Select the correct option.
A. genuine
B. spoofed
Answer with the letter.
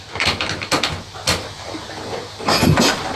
A